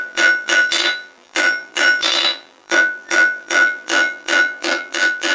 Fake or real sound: fake